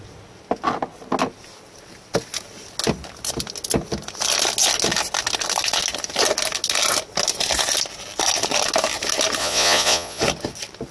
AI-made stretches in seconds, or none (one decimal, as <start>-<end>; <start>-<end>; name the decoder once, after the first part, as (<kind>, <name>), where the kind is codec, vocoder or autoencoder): 9.4-10.2 (vocoder, Vocos)